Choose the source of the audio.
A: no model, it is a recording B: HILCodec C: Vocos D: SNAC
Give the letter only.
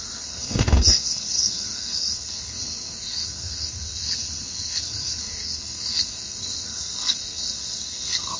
D